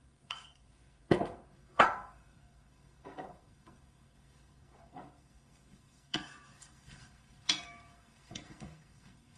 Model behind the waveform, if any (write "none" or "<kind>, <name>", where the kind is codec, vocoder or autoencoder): codec, SNAC